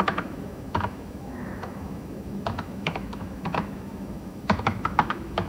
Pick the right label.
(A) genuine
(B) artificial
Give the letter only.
B